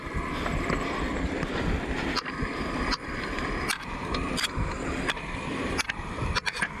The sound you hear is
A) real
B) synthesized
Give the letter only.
B